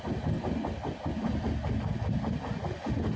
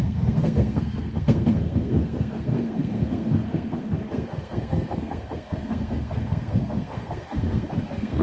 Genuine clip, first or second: first